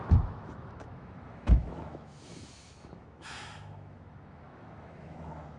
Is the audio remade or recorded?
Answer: remade